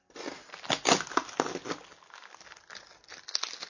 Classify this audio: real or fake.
real